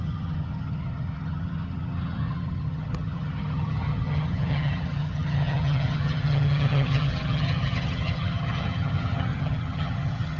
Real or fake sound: fake